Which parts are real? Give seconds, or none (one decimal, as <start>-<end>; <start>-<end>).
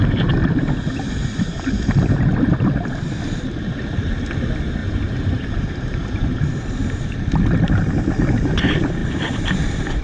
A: 0.0-4.8; 6.6-10.0